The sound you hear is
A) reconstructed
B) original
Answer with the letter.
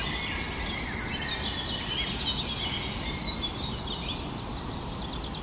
B